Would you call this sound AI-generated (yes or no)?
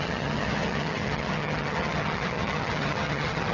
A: yes